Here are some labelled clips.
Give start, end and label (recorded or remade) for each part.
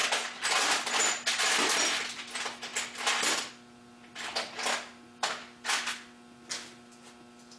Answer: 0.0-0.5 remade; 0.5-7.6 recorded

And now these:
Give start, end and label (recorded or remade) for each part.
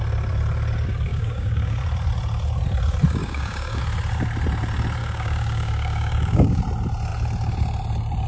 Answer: 0.0-1.1 recorded; 1.1-1.8 remade; 1.8-3.2 recorded; 3.2-3.8 remade; 3.8-5.0 recorded; 5.0-6.6 remade; 6.6-8.3 recorded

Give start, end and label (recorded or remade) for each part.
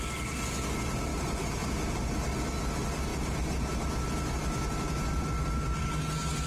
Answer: 0.0-1.1 recorded; 1.1-2.1 remade; 2.1-3.1 recorded; 3.1-3.7 remade; 3.7-6.5 recorded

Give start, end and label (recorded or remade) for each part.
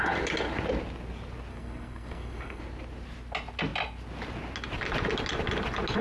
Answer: 0.0-1.5 recorded; 1.5-2.6 remade; 2.6-6.0 recorded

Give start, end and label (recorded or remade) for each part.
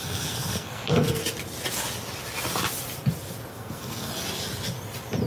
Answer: 0.0-1.2 remade; 1.2-3.5 recorded; 3.5-4.1 remade; 4.1-5.3 recorded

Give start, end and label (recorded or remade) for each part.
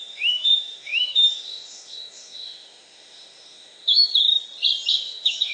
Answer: 0.0-4.1 remade; 4.1-4.9 recorded; 4.9-5.5 remade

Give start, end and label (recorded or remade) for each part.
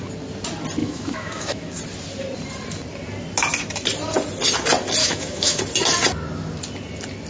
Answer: 0.0-0.8 recorded; 0.8-1.8 remade; 1.8-5.0 recorded; 5.0-5.6 remade; 5.6-7.3 recorded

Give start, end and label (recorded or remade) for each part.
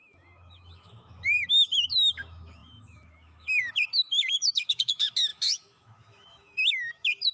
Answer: 0.0-7.3 remade